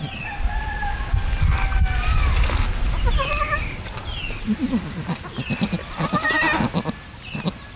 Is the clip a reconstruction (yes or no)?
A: no